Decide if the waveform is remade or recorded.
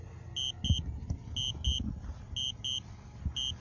recorded